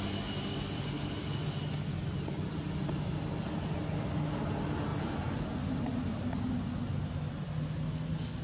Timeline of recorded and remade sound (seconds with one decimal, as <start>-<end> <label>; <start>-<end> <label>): 0.0-8.4 recorded